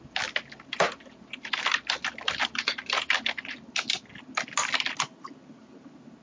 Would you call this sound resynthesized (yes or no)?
no